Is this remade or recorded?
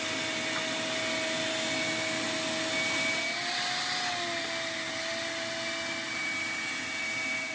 recorded